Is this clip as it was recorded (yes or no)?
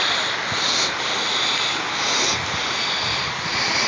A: yes